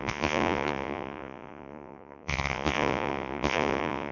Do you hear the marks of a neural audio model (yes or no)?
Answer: yes